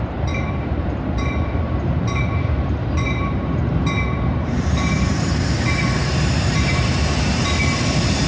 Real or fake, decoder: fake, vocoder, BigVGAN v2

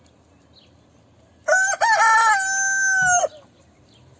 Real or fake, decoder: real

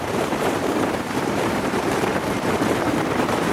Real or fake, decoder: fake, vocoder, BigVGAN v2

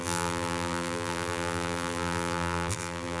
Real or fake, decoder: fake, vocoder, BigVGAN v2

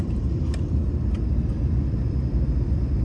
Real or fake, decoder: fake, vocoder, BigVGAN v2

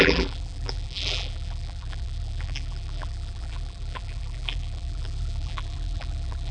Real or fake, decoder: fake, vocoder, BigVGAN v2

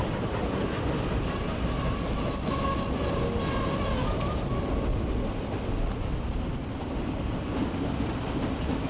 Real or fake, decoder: real